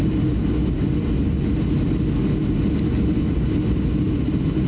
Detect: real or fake real